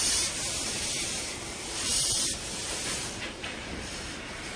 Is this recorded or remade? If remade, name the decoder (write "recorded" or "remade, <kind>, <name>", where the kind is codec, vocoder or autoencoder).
remade, vocoder, BigVGAN v2